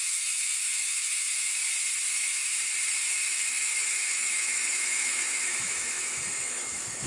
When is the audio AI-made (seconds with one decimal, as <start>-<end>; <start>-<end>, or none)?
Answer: 0.0-1.6; 2.1-2.5; 3.1-7.1